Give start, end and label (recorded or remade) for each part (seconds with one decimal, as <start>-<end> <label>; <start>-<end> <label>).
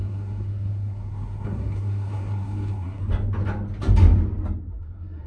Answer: 0.0-3.0 remade; 3.0-4.6 recorded; 4.6-5.3 remade